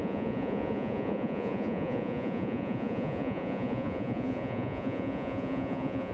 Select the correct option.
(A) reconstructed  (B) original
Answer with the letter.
A